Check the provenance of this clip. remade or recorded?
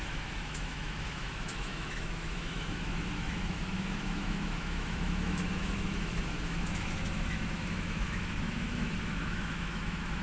remade